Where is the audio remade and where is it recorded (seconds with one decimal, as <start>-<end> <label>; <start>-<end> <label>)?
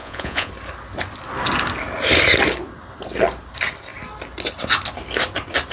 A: 0.0-0.5 remade; 0.5-5.7 recorded